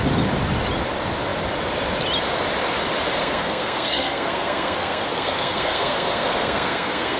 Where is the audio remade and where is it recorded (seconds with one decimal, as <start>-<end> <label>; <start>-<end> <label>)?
0.0-3.2 recorded; 3.2-7.2 remade